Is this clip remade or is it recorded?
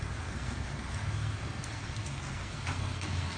remade